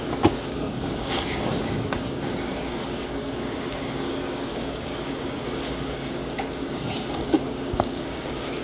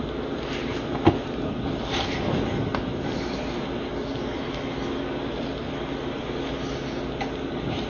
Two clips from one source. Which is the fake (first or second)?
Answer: first